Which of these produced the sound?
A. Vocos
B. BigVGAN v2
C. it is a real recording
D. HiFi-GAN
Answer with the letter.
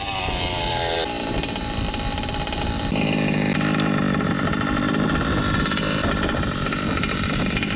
B